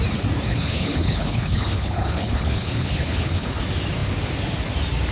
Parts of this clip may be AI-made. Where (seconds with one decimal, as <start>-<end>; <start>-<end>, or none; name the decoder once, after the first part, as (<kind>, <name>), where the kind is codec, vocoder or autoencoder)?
0.5-3.6 (codec, HILCodec)